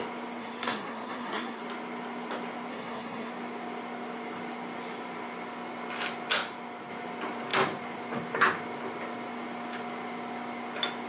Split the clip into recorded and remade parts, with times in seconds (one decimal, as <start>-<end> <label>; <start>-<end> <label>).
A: 0.0-0.4 recorded; 0.4-1.6 remade; 1.6-2.7 recorded; 2.7-3.3 remade; 3.3-11.1 recorded